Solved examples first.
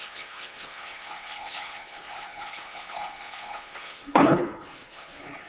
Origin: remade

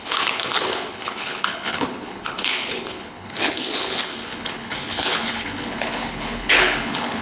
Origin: remade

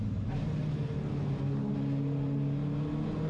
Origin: recorded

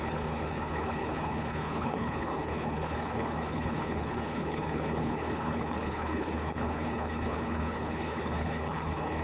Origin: remade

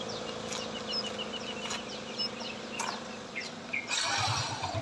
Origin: recorded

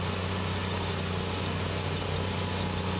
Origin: recorded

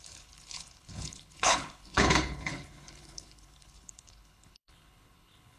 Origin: remade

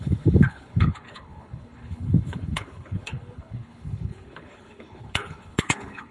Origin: remade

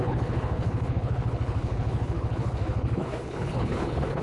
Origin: remade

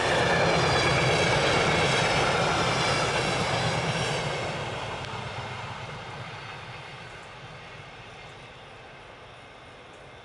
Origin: recorded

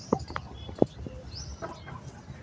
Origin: recorded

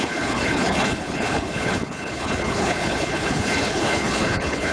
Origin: remade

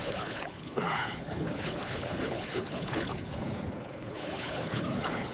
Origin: remade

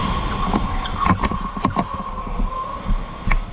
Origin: recorded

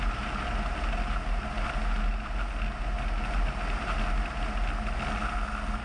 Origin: recorded